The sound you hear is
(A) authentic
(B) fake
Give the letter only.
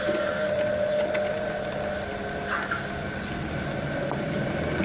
A